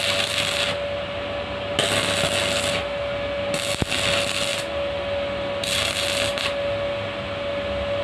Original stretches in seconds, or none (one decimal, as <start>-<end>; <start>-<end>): 0.0-8.0